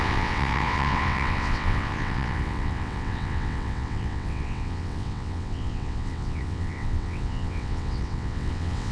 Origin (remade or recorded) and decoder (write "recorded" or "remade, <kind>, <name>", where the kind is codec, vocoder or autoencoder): remade, vocoder, WaveNeXt